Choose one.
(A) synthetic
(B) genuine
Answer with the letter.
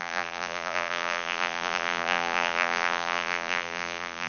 A